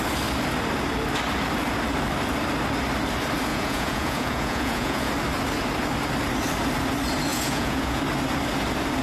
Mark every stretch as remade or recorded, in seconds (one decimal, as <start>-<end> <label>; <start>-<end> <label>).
0.0-3.5 recorded; 3.5-5.1 remade; 5.1-7.3 recorded; 7.3-8.0 remade; 8.0-9.0 recorded